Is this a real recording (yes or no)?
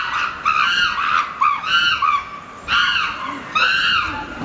yes